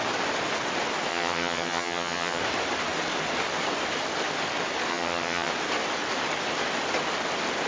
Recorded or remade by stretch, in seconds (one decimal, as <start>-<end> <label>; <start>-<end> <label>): 0.0-1.1 recorded; 1.1-2.4 remade; 2.4-4.9 recorded; 4.9-5.5 remade; 5.5-7.7 recorded